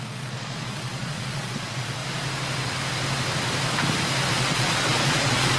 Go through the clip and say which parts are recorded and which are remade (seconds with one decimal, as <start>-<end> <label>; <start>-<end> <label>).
0.0-2.0 remade; 2.0-4.3 recorded; 4.3-5.6 remade